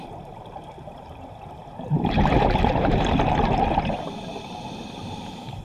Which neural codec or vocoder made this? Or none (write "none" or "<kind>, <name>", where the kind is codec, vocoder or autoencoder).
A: vocoder, BigVGAN v2